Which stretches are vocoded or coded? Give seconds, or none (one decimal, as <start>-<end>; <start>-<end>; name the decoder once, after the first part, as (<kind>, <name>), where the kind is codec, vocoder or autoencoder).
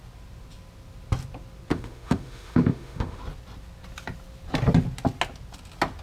1.7-3.2 (autoencoder, DAC-VAE)